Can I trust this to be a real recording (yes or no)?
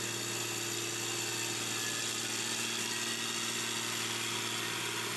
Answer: yes